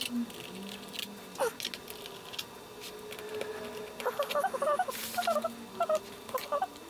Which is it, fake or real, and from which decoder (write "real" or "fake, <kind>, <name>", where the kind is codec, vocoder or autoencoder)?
real